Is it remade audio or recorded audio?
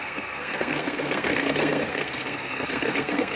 remade